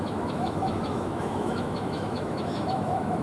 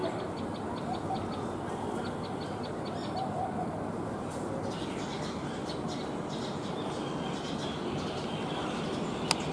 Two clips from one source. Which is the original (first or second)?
second